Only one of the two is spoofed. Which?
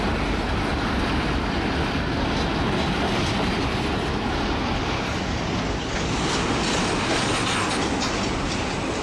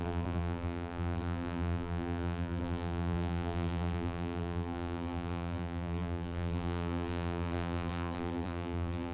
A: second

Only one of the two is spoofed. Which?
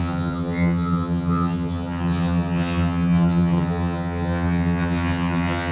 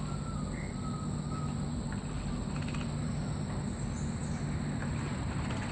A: first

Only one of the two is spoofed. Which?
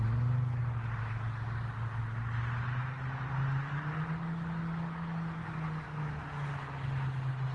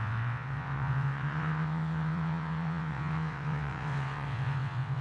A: second